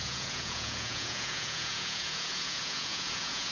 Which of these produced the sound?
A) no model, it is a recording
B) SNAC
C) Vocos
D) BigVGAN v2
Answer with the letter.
C